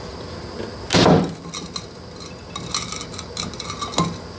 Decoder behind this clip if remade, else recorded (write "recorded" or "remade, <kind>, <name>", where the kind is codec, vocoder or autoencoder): recorded